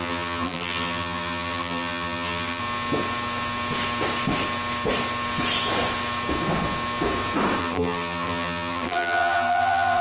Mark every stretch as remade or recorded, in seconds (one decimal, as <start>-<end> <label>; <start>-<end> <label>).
0.0-2.6 remade; 2.6-7.6 recorded; 7.6-10.0 remade